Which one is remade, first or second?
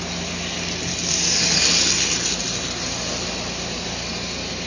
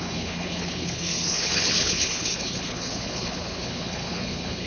second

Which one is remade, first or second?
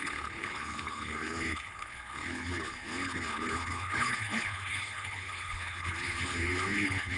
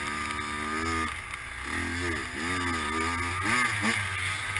first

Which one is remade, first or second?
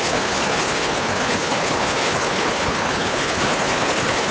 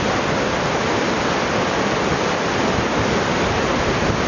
first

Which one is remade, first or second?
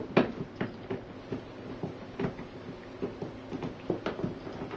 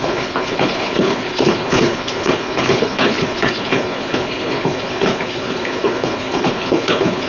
second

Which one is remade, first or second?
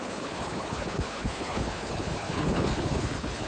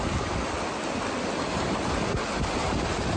first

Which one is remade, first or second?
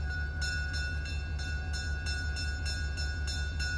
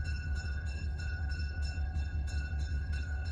second